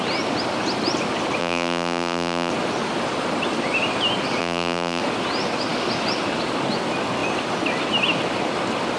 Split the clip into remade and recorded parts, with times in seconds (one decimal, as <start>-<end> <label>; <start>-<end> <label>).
0.0-1.4 recorded; 1.4-2.5 remade; 2.5-4.4 recorded; 4.4-5.0 remade; 5.0-9.0 recorded

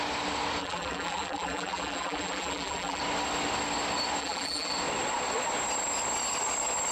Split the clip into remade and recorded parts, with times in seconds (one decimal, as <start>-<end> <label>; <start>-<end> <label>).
0.0-0.6 recorded; 0.6-3.0 remade; 3.0-4.2 recorded; 4.2-4.7 remade; 4.7-6.9 recorded